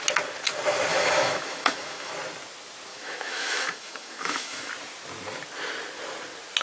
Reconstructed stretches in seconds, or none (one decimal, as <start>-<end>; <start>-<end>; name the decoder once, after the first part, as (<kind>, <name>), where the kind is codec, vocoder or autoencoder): 0.9-2.1 (autoencoder, DAC-VAE); 2.9-4.7